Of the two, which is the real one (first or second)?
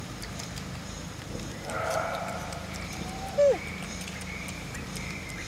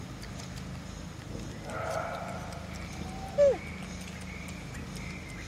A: second